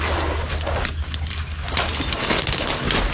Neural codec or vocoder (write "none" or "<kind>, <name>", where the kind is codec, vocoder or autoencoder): none